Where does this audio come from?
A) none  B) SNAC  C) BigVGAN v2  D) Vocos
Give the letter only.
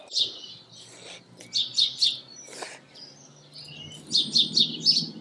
A